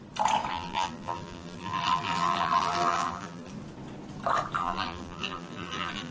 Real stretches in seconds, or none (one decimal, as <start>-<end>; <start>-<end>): 0.0-0.5; 3.5-4.6